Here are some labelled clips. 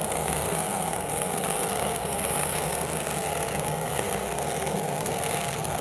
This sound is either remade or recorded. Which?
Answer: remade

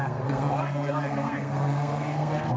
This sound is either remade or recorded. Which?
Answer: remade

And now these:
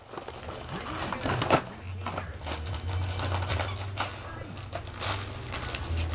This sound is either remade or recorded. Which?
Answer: recorded